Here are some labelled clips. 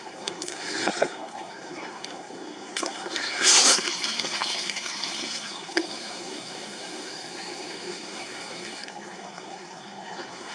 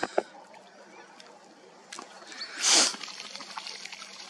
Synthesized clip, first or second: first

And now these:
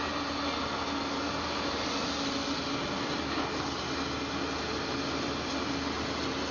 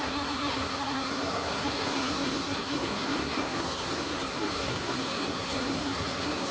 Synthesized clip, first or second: second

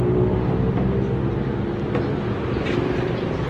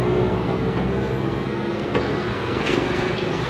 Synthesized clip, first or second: second